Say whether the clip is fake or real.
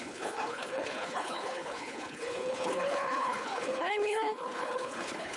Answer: fake